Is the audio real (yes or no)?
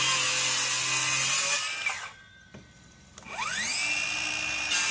yes